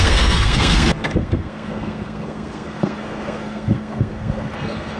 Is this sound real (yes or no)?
no